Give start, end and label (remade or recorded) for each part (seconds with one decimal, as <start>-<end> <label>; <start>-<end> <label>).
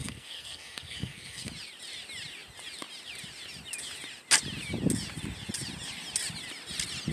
0.0-1.5 remade; 1.5-7.1 recorded